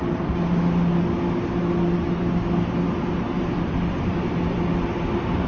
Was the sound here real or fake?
real